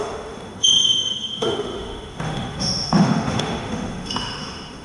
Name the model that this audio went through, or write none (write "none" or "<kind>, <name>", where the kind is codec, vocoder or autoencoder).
autoencoder, DAC-VAE